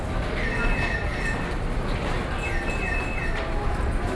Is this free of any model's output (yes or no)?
yes